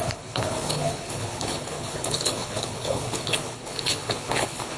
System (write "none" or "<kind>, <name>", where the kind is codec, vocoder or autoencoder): codec, HILCodec